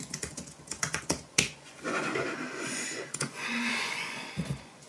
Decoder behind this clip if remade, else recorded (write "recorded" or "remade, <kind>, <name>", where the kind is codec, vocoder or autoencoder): remade, vocoder, Vocos